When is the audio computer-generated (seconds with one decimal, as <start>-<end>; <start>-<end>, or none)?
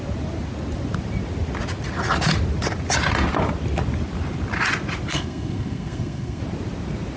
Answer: 5.1-6.4